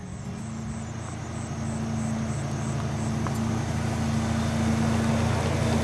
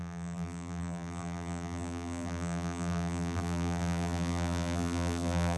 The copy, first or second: second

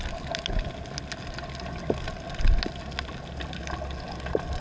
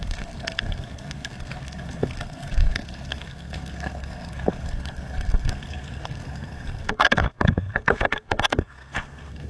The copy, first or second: second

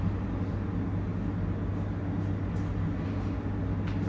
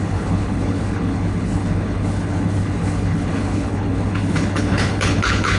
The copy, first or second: second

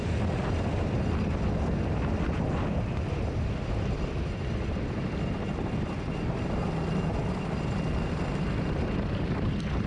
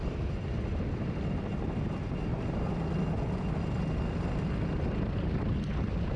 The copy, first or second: first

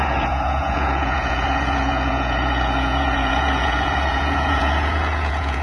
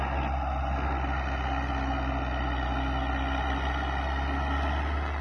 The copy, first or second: first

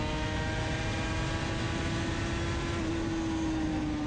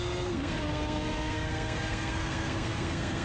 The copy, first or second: second